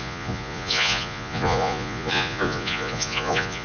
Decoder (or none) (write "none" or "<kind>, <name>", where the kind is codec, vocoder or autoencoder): vocoder, Vocos